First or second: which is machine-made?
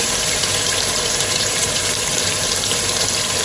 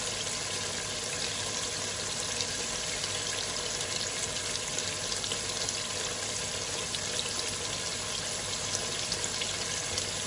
first